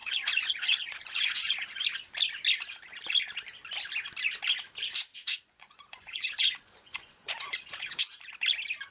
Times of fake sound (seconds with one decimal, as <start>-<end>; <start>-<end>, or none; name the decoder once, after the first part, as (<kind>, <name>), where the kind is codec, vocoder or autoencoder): 0.0-1.8 (vocoder, Vocos); 5.1-8.3